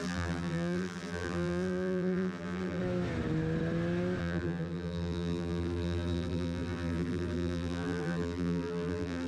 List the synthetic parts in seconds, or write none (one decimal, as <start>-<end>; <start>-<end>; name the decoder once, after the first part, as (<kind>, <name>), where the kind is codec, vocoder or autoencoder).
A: 0.0-2.8 (vocoder, BigVGAN v2); 4.2-9.3